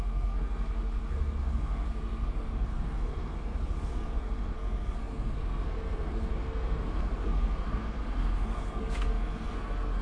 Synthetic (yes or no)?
yes